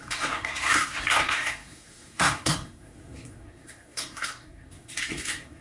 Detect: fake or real fake